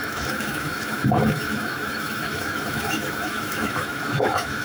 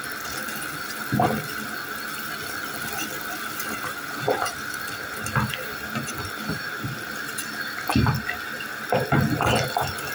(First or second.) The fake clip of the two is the first